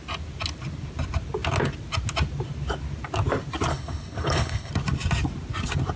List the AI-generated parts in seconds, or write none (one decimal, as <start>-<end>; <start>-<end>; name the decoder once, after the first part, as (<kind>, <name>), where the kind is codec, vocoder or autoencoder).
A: 3.7-4.7 (codec, HILCodec)